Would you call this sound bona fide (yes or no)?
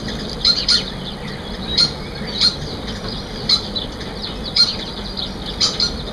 no